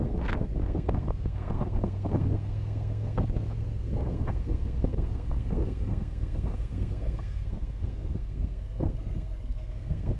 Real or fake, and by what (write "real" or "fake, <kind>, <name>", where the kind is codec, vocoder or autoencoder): fake, codec, SNAC